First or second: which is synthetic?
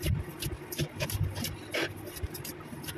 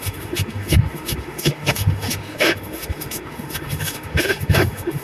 second